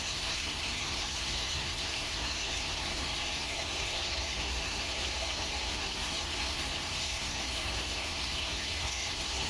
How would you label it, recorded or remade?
remade